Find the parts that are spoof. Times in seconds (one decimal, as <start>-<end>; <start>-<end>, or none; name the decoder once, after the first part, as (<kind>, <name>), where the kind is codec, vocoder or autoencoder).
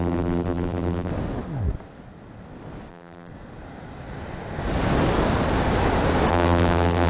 0.0-1.1 (vocoder, BigVGAN v2); 2.9-3.3; 6.3-7.1